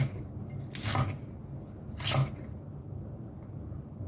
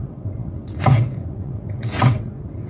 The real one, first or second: first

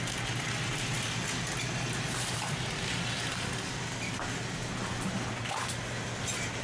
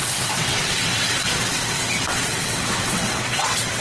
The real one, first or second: first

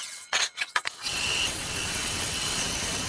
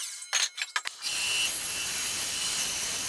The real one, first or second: second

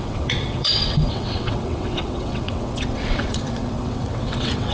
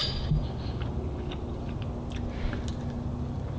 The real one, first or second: second